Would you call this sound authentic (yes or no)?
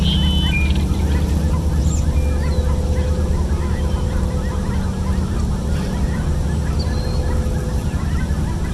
yes